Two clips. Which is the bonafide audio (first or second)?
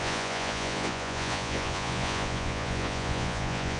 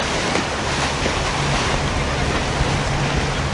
second